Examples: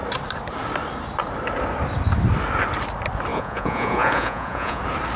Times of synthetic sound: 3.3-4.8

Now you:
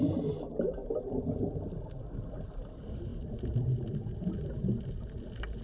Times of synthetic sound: none

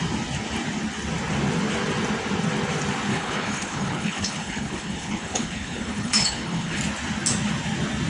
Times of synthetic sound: 3.1-6.8

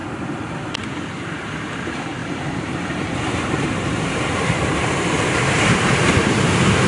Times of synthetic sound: 2.2-6.3

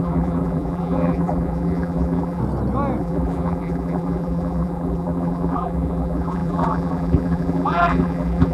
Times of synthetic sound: 0.0-2.4; 3.0-8.5

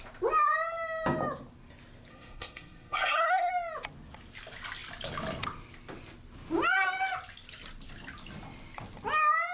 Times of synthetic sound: 2.1-3.5